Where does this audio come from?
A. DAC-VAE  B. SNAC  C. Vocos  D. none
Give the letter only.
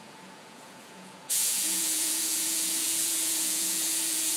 C